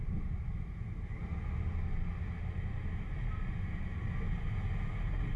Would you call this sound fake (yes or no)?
no